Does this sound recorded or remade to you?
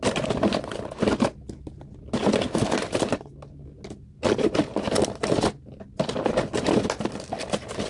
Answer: recorded